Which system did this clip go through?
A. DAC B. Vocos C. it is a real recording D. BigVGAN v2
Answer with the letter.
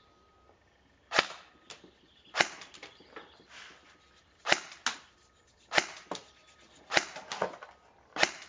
C